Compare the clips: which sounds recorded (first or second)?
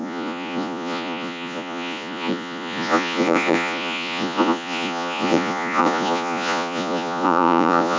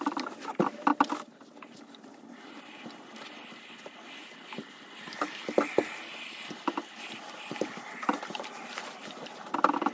second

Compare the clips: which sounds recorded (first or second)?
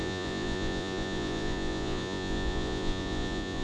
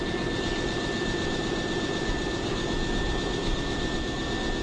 second